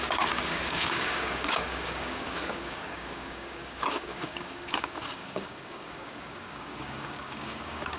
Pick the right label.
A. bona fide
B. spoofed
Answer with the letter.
B